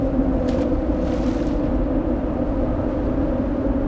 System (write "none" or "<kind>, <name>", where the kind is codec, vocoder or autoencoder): none